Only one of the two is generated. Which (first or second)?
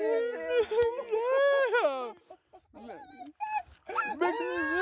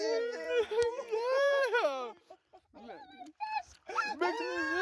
second